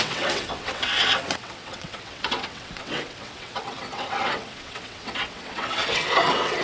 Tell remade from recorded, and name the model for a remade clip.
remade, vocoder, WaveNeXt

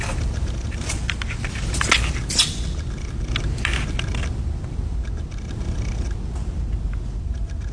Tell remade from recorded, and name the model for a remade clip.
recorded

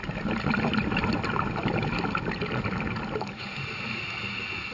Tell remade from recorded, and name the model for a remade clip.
recorded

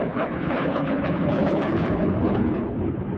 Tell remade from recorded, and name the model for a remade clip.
remade, codec, HILCodec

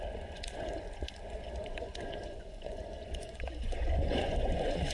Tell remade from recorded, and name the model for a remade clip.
remade, vocoder, Vocos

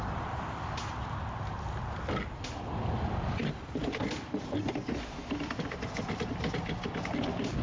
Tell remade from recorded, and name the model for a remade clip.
recorded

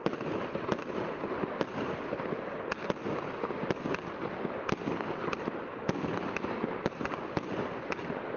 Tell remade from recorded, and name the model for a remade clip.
recorded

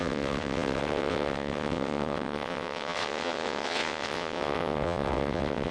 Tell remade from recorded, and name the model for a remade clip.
remade, vocoder, WaveNeXt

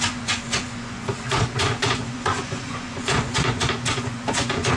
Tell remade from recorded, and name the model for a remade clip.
remade, vocoder, Vocos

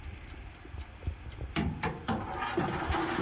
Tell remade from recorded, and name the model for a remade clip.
recorded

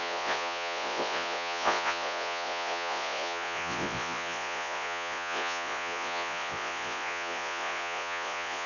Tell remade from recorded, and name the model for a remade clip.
remade, vocoder, Vocos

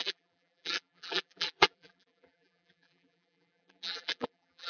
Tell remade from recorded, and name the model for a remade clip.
remade, vocoder, BigVGAN v2